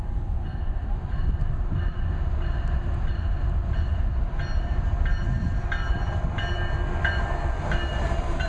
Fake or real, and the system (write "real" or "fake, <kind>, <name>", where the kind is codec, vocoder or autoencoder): real